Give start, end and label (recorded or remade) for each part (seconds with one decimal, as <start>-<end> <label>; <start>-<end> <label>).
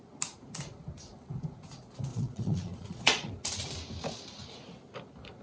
0.0-2.1 recorded; 2.1-3.3 remade; 3.3-5.4 recorded